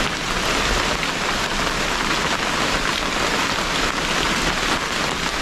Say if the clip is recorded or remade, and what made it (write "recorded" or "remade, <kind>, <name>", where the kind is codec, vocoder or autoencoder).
recorded